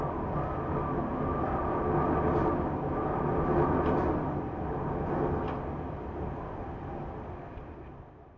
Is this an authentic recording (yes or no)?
yes